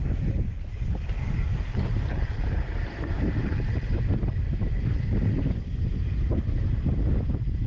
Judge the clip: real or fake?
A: real